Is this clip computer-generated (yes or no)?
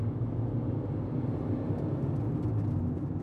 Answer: no